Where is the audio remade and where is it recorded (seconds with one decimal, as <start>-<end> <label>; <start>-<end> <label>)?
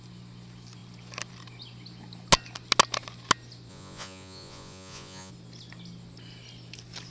0.0-3.7 recorded; 3.7-5.3 remade; 5.3-7.1 recorded